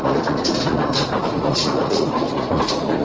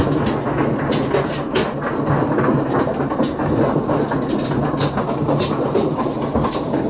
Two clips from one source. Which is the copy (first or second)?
first